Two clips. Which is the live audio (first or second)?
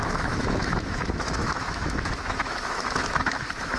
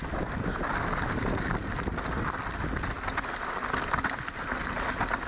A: second